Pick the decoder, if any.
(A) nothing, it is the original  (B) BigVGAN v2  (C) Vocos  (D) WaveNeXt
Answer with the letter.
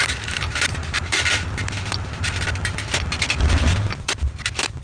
B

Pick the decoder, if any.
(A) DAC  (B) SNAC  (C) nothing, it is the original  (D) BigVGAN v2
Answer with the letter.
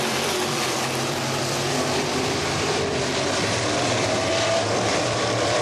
D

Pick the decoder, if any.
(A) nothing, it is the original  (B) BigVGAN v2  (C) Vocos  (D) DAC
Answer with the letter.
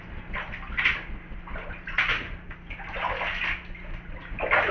A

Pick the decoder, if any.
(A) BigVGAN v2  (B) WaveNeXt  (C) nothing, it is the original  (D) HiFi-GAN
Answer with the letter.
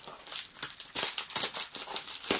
C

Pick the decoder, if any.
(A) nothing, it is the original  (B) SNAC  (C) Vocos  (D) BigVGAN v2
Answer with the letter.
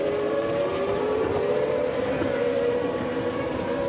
D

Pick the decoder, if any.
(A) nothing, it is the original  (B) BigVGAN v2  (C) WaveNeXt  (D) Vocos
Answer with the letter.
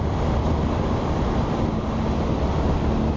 A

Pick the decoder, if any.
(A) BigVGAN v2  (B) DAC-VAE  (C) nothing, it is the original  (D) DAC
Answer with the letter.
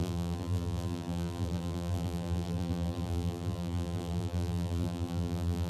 A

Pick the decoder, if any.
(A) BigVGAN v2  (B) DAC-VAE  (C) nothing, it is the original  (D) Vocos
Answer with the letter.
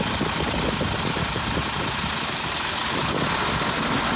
C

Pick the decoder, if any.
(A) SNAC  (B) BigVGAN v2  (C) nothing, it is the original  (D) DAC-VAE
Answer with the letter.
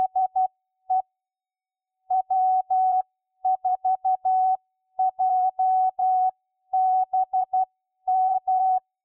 B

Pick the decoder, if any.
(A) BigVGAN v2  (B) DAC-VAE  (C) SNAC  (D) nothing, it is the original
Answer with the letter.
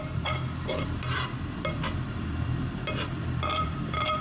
A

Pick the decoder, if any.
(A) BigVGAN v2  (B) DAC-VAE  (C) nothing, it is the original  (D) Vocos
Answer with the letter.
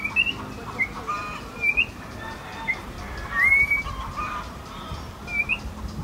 C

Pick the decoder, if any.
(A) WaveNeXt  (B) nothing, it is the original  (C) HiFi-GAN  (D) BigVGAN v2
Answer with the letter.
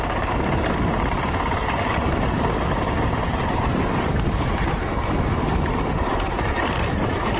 D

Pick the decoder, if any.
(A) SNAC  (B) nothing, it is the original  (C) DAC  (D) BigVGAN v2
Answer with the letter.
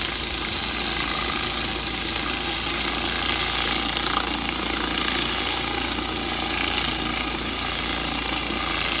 B